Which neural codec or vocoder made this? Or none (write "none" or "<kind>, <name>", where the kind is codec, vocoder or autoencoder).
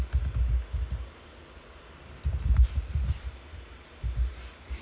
none